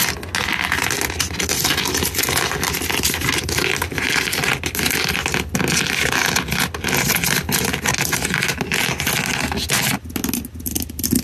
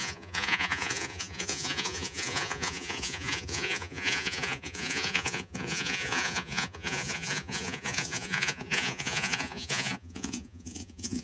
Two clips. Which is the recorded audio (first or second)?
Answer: first